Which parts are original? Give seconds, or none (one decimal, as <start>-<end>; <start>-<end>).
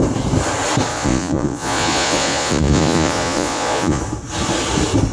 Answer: 0.0-0.9; 4.0-5.1